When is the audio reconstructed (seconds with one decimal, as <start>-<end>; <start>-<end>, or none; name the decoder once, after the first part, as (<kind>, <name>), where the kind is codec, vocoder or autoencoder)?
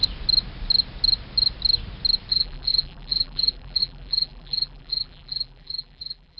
2.3-6.4 (vocoder, BigVGAN v2)